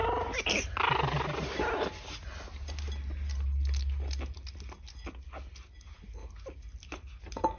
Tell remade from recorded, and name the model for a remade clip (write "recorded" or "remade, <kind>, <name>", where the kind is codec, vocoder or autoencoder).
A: recorded